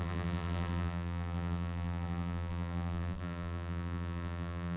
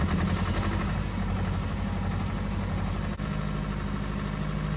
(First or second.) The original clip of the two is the second